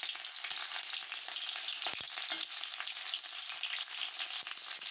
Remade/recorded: recorded